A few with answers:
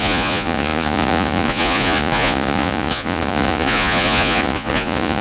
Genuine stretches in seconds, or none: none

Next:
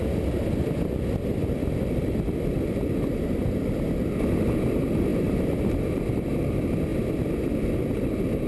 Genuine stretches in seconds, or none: 0.0-5.1; 6.0-8.5